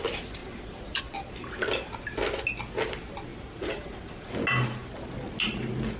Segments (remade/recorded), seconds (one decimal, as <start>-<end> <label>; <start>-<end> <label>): 0.0-0.4 recorded; 0.4-1.0 remade; 1.0-3.3 recorded; 3.3-4.3 remade; 4.3-6.0 recorded